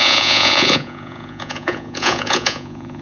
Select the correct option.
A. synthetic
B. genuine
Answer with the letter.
A